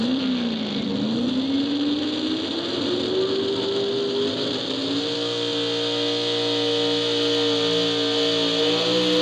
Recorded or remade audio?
recorded